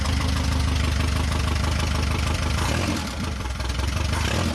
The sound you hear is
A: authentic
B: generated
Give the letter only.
B